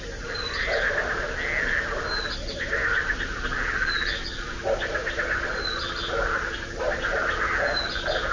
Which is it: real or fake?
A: real